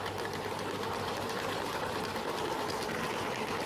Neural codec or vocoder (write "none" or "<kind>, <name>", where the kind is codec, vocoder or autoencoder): none